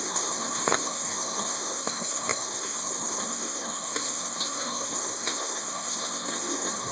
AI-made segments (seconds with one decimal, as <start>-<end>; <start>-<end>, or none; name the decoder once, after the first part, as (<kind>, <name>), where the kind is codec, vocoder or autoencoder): 0.0-6.9 (codec, SNAC)